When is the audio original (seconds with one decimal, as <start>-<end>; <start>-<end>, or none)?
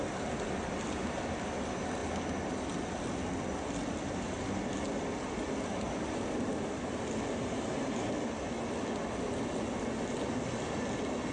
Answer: 0.0-11.3